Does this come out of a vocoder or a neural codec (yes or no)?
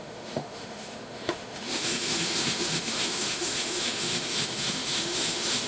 yes